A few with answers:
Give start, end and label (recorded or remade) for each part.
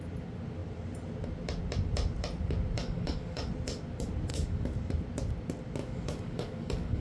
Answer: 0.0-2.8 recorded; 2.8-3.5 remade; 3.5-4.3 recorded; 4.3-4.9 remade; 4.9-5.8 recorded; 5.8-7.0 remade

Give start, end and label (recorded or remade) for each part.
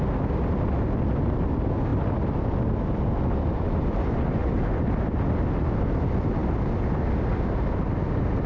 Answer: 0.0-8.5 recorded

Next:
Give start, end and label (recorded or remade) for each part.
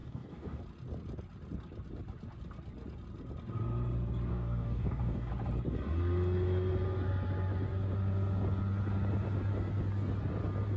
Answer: 0.0-0.6 remade; 0.6-4.3 recorded; 4.3-5.3 remade; 5.3-10.8 recorded